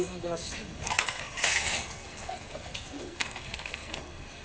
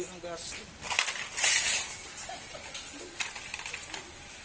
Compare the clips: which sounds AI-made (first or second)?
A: first